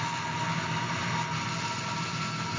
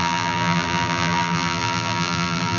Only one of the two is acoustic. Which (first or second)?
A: first